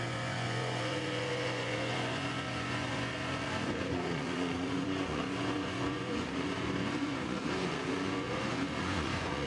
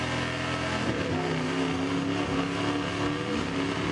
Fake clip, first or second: first